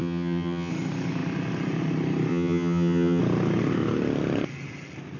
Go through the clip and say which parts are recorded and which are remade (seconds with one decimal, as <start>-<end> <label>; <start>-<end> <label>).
0.0-0.7 remade; 0.7-2.3 recorded; 2.3-3.2 remade; 3.2-5.2 recorded